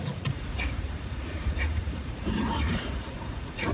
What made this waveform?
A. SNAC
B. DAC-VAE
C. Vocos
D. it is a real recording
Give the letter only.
C